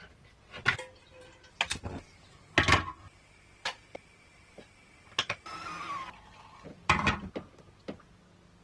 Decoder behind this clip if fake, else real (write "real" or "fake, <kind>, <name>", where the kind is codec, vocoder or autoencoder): real